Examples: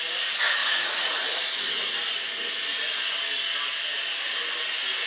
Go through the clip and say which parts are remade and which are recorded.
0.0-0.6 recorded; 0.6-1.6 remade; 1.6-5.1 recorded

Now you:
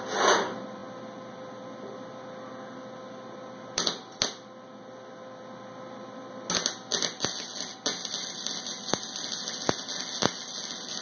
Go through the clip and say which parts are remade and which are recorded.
0.0-11.0 recorded

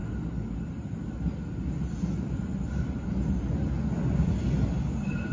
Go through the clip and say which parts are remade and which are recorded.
0.0-5.3 recorded

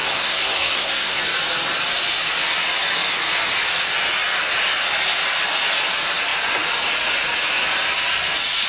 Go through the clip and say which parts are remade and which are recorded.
0.0-1.2 remade; 1.2-8.7 recorded

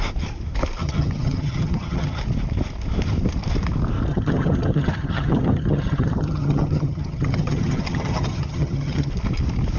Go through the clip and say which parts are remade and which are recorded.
0.0-0.8 recorded; 0.8-2.2 remade; 2.2-4.1 recorded; 4.1-9.1 remade; 9.1-9.8 recorded

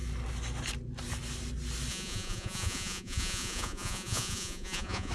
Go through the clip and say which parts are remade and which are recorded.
0.0-1.9 recorded; 1.9-5.1 remade

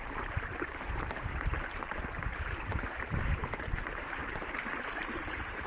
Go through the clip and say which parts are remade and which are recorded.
0.0-1.9 remade; 1.9-3.0 recorded; 3.0-5.7 remade

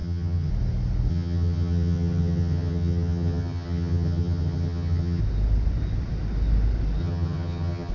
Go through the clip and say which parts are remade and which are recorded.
0.0-0.5 remade; 0.5-1.1 recorded; 1.1-5.2 remade; 5.2-7.0 recorded; 7.0-7.9 remade